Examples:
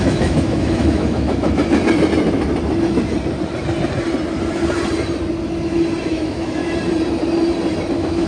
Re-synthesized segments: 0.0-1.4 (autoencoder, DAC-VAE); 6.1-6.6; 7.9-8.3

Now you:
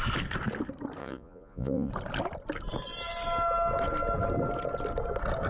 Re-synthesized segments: 1.0-1.9 (vocoder, Vocos)

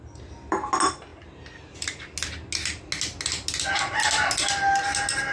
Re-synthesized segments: none

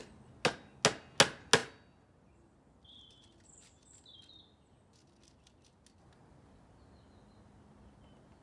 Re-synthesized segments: none

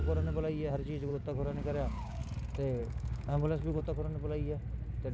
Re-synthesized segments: 1.1-2.2 (codec, DAC); 2.8-3.8

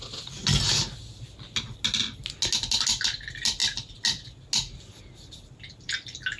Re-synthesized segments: none

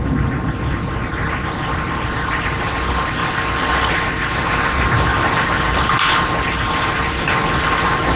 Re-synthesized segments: 0.0-3.2 (vocoder, BigVGAN v2); 3.9-8.2